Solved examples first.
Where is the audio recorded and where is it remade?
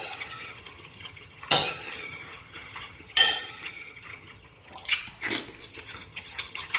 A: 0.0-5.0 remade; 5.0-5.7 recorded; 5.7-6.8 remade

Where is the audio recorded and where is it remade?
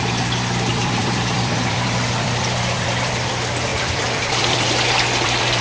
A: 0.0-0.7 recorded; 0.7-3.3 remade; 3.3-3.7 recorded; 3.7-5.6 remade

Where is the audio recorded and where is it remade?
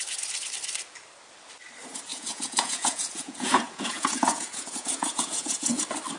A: 0.0-2.1 recorded; 2.1-5.8 remade; 5.8-6.2 recorded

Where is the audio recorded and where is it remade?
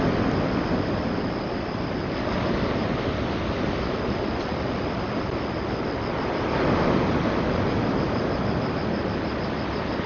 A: 0.0-10.1 recorded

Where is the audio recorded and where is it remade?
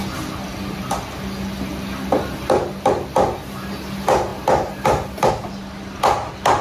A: 0.0-6.6 recorded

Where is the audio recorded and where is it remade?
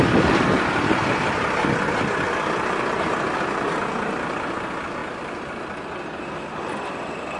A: 0.0-7.4 recorded